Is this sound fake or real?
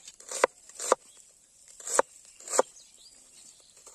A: fake